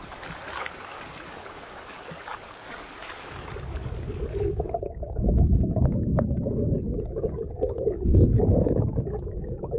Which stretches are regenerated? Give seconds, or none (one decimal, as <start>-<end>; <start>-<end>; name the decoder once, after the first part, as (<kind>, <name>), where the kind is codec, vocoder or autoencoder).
0.0-9.8 (codec, DAC)